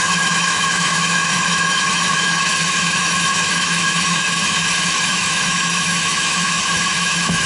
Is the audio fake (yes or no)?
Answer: yes